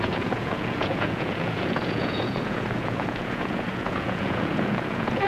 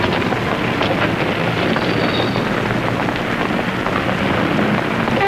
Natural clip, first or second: second